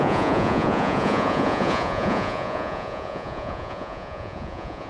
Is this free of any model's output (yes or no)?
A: no